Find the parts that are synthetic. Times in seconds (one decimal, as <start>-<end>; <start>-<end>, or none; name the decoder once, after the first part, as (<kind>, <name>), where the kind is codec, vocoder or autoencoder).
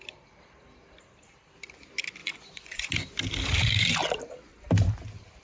2.2-2.9 (vocoder, Vocos)